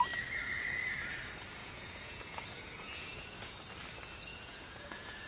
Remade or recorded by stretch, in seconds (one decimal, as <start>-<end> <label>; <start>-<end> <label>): 0.0-1.6 recorded; 1.6-3.6 remade; 3.6-4.3 recorded; 4.3-5.3 remade